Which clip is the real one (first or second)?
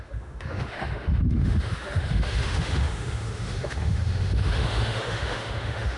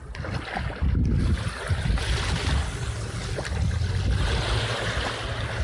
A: second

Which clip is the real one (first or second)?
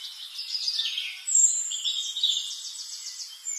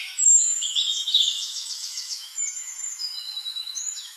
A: first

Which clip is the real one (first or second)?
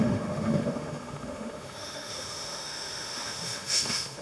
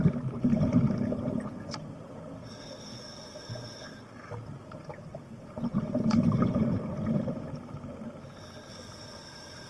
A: second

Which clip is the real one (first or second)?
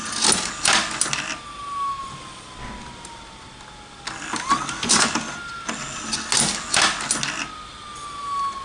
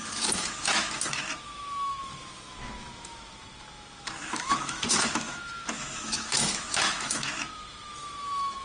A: first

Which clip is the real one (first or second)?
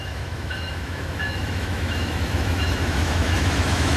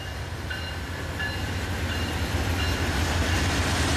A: second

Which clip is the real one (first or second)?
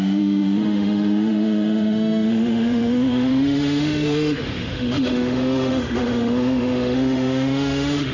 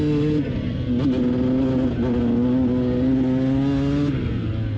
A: second